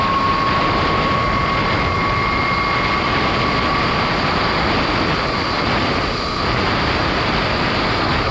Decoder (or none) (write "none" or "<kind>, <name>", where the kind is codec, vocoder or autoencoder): none